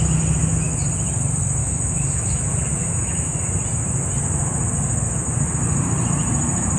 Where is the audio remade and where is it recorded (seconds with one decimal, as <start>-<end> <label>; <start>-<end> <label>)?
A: 0.0-1.6 recorded; 1.6-2.4 remade; 2.4-2.8 recorded; 2.8-3.4 remade; 3.4-6.8 recorded